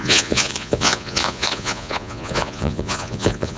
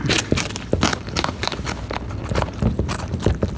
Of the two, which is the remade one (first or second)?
first